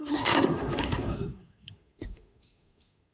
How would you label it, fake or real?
fake